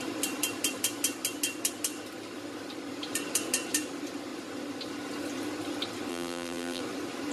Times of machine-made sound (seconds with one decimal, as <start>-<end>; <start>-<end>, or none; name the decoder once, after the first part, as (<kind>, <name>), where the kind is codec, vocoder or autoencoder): 6.1-6.8 (vocoder, BigVGAN v2)